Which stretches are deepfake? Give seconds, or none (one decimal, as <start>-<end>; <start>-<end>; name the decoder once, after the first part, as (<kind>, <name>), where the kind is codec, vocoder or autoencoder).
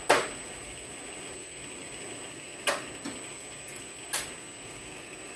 none